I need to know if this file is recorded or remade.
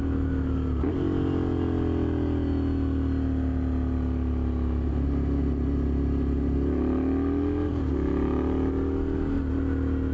recorded